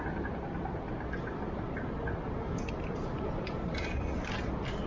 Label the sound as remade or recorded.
recorded